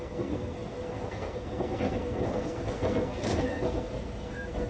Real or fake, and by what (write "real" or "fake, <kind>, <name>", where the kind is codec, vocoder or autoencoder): fake, codec, SNAC